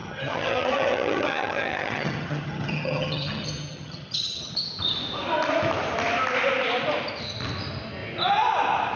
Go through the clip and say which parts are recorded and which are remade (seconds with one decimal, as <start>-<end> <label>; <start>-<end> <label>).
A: 0.0-4.5 remade; 4.5-9.0 recorded